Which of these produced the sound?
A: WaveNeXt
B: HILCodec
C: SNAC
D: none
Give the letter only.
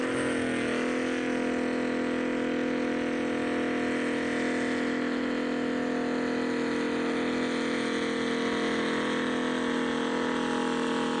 D